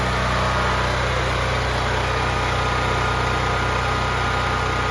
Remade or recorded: recorded